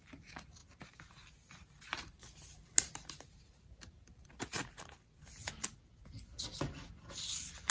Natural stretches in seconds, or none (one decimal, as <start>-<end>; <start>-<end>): 0.0-0.6; 5.2-7.7